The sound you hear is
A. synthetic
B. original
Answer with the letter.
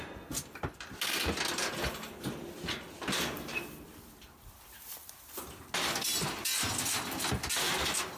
B